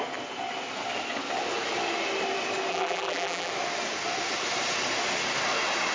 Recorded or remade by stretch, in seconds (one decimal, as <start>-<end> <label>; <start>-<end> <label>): 0.0-2.7 recorded; 2.7-3.5 remade; 3.5-5.9 recorded